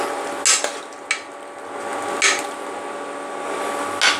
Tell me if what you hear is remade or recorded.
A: recorded